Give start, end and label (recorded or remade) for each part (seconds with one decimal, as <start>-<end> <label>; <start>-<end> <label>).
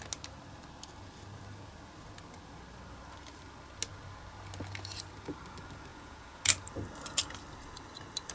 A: 0.0-5.9 recorded; 5.9-6.4 remade; 6.4-8.3 recorded